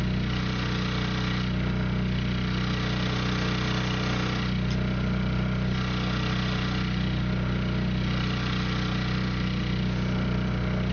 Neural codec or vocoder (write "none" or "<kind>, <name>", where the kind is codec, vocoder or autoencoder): none